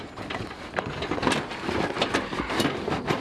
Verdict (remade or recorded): recorded